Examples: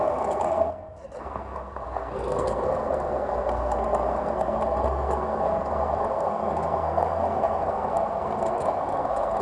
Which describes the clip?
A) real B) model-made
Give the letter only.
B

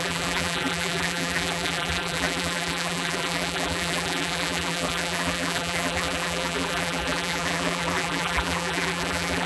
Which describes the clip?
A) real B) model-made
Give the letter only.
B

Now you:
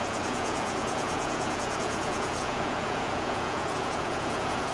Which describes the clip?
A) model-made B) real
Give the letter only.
A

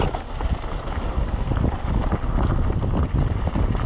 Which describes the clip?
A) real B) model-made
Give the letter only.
B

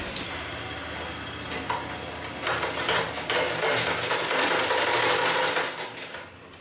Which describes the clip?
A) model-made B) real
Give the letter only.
B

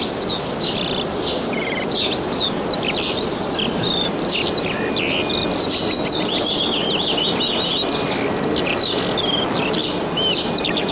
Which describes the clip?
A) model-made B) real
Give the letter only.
B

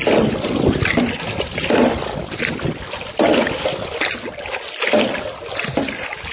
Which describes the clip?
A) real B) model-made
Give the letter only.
A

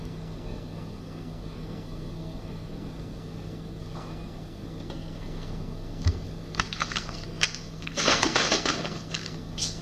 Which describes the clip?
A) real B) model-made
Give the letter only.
B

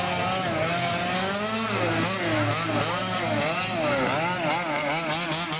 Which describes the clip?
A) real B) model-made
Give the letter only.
A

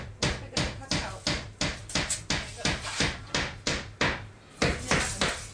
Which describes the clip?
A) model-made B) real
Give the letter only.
B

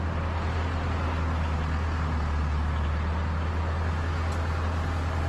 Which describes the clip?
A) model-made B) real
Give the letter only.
B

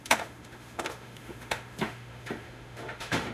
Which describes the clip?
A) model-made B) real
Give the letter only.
A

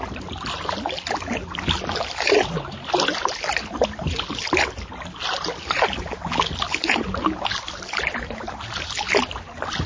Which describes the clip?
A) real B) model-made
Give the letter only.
A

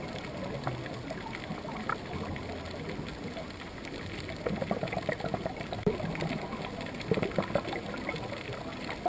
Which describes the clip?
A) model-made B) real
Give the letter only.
B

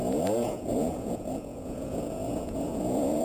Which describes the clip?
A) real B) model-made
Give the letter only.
B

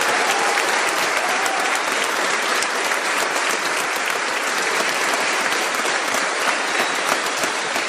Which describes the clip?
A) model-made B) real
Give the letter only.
A